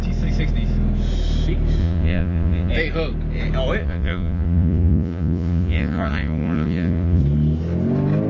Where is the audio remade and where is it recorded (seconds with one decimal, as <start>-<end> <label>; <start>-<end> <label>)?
0.0-1.8 recorded; 1.8-2.7 remade; 2.7-3.8 recorded; 3.8-7.2 remade; 7.2-8.3 recorded